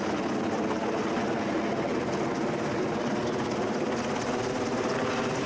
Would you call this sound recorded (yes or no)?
yes